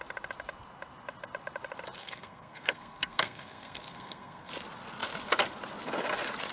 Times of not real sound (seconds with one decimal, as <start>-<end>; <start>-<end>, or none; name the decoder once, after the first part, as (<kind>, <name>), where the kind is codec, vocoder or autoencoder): 2.0-4.5 (codec, SNAC)